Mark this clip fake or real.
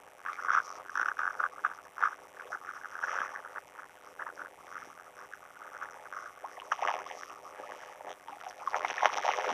fake